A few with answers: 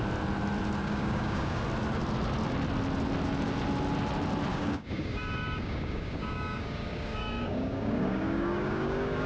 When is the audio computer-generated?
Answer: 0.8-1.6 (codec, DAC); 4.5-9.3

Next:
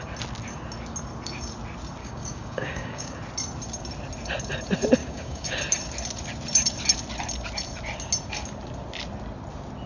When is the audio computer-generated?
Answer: 2.0-3.2 (codec, DAC); 5.0-5.6

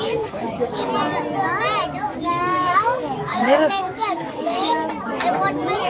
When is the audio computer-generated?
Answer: 0.0-0.9 (codec, DAC); 2.4-4.8

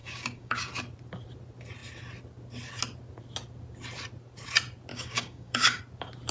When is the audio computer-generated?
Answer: 0.0-0.7 (codec, DAC); 4.9-5.8

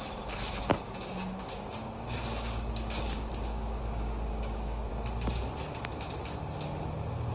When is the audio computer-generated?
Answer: 0.7-4.9 (codec, DAC)